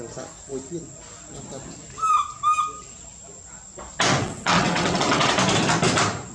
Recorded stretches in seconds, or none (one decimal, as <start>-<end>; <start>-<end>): 0.0-4.2; 5.3-6.3